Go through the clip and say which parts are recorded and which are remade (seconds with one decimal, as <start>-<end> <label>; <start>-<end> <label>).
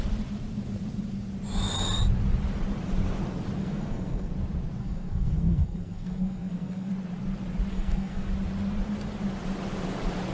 0.0-3.6 recorded; 3.6-4.3 remade; 4.3-4.8 recorded; 4.8-6.9 remade; 6.9-7.7 recorded; 7.7-8.3 remade; 8.3-10.3 recorded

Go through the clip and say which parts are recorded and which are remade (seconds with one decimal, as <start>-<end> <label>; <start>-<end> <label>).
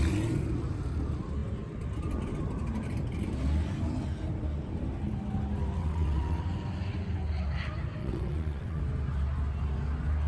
0.0-5.8 recorded; 5.8-6.4 remade; 6.4-8.0 recorded; 8.0-8.8 remade; 8.8-10.3 recorded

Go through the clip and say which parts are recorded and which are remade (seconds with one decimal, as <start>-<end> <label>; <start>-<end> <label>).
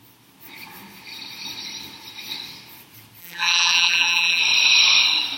0.0-3.2 recorded; 3.2-4.4 remade; 4.4-5.4 recorded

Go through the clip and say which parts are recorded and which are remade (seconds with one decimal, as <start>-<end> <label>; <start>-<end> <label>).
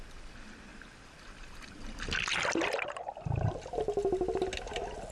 0.0-0.7 recorded; 0.7-3.8 remade; 3.8-5.1 recorded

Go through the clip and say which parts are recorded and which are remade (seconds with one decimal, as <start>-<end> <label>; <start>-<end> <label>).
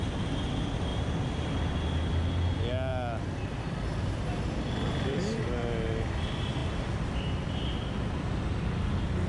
0.0-0.9 recorded; 0.9-1.7 remade; 1.7-2.9 recorded; 2.9-6.1 remade; 6.1-6.6 recorded; 6.6-7.6 remade; 7.6-9.3 recorded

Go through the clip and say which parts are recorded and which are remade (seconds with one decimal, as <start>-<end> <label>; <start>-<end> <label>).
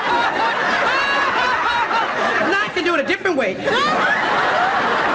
0.0-5.1 recorded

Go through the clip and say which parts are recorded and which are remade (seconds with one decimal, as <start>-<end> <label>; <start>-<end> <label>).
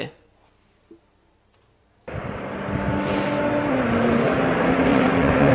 0.0-4.9 recorded; 4.9-5.5 remade